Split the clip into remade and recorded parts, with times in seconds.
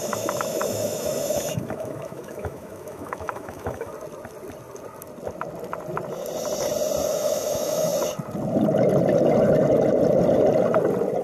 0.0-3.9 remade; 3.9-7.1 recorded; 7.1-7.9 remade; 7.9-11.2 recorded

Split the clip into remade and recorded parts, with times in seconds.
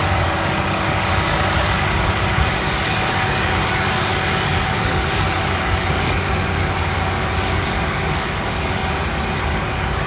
0.0-8.8 remade; 8.8-9.4 recorded; 9.4-10.1 remade